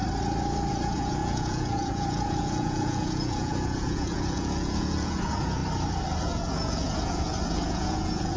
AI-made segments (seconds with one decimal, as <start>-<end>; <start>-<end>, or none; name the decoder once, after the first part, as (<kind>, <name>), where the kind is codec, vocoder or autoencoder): 0.7-5.6 (vocoder, Vocos); 6.2-8.4